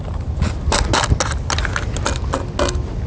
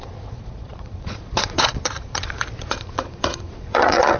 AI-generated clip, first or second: second